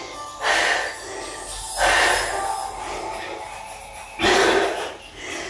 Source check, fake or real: real